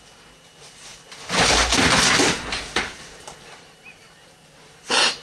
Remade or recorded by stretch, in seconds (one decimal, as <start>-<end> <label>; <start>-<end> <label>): 0.0-5.2 recorded